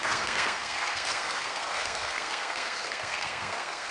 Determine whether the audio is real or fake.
fake